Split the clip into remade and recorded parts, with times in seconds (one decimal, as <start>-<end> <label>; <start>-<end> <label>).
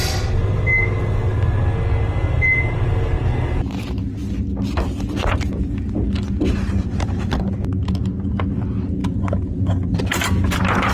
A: 0.0-10.9 recorded